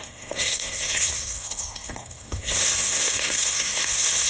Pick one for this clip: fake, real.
fake